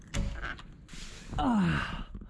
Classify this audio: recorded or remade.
recorded